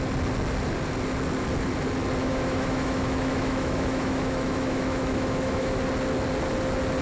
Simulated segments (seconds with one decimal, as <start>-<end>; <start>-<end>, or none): 2.2-5.8